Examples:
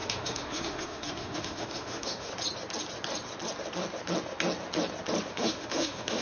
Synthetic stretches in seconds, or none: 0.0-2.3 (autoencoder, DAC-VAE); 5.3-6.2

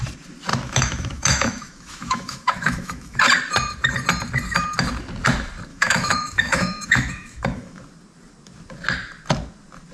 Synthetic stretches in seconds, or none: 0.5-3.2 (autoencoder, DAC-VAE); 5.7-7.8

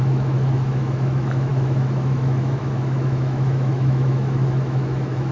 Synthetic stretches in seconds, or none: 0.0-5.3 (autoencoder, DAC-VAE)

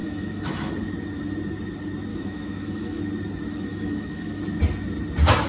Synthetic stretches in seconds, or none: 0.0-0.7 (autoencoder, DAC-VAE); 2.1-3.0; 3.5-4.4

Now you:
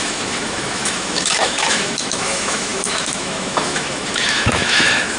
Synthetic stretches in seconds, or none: 0.0-5.2 (autoencoder, DAC-VAE)

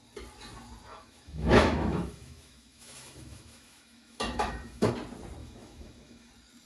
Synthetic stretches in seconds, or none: 0.9-4.9 (autoencoder, DAC-VAE); 5.4-6.3

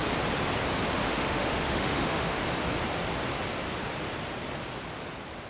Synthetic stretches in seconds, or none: 1.0-2.4 (autoencoder, DAC-VAE)

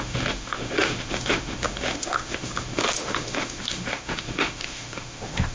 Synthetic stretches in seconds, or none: 0.0-5.5 (autoencoder, DAC-VAE)